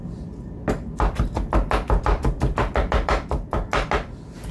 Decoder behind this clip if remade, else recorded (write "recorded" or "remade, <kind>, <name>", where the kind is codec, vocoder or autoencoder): recorded